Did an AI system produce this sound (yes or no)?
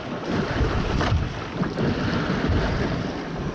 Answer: no